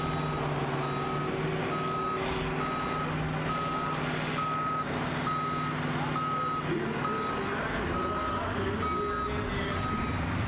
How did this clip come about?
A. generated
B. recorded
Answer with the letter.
B